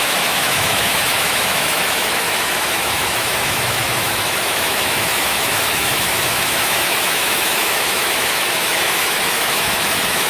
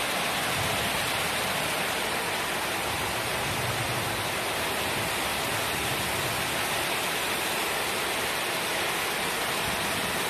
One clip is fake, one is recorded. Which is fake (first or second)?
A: first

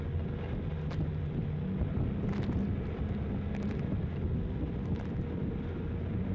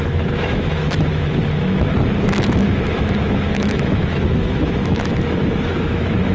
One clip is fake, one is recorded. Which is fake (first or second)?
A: second